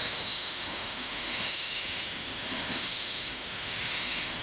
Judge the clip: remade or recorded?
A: remade